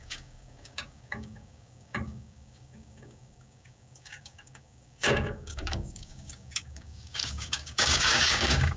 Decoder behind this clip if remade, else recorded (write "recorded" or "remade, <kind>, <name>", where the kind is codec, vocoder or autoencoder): remade, codec, DAC